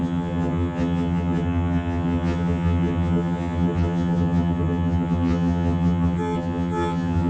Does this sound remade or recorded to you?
remade